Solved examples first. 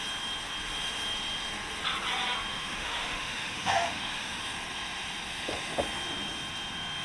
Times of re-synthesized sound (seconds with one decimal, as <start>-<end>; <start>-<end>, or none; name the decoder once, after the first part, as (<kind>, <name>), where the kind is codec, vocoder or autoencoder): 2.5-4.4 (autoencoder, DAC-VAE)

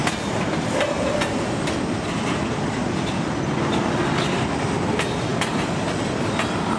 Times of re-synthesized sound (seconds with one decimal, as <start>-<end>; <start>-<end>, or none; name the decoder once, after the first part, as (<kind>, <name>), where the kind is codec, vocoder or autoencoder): 0.0-4.1 (vocoder, BigVGAN v2)

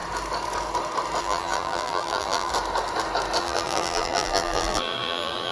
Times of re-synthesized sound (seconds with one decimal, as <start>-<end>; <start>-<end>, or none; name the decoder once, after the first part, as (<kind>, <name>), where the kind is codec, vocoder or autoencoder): 1.2-2.5 (vocoder, BigVGAN v2); 3.4-5.5